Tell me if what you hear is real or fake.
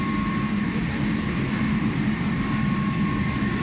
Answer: real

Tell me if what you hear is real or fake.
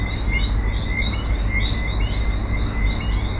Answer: real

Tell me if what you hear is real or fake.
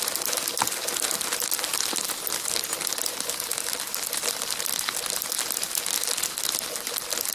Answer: real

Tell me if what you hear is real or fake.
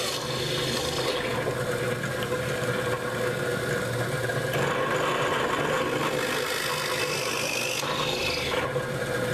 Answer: real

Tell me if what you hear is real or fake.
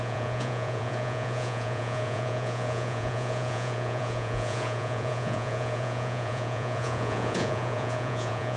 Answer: fake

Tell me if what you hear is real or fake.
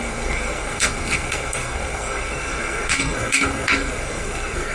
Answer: fake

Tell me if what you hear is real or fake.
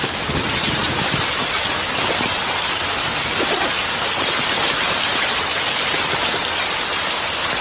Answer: real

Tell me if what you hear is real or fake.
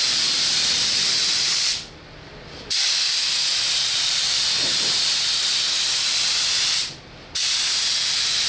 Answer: fake